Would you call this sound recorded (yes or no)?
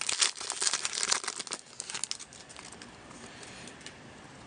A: yes